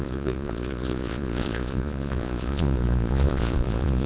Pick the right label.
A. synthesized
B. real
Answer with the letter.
A